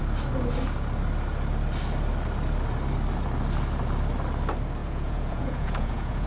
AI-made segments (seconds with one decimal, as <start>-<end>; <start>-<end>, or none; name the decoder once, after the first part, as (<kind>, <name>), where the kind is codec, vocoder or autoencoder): 4.8-6.3 (vocoder, Vocos)